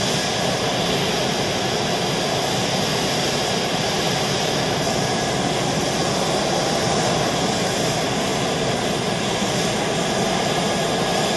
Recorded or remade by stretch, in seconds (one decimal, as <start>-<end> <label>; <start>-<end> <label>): 0.0-11.4 recorded